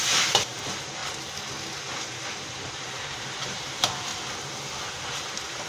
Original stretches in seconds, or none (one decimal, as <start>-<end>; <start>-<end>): 1.0-2.3; 4.1-4.9